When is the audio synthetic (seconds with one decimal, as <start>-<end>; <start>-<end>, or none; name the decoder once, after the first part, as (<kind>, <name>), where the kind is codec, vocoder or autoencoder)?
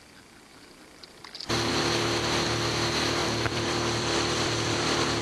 3.2-4.8 (vocoder, BigVGAN v2)